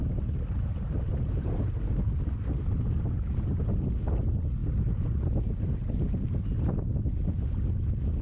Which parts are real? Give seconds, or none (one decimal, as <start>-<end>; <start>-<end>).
0.0-8.2